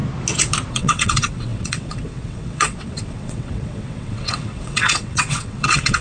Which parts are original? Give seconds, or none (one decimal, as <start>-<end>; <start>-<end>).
0.0-0.7